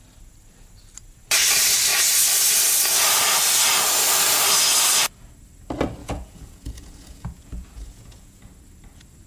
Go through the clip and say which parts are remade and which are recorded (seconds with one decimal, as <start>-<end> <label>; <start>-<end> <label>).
0.0-6.0 recorded; 6.0-8.4 remade; 8.4-9.3 recorded